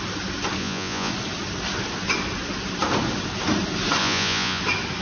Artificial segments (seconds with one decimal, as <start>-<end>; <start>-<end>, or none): 0.6-1.1; 4.0-4.6